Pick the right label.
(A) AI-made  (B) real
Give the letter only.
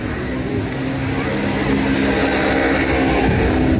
B